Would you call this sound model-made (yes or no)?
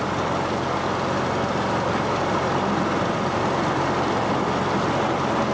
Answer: no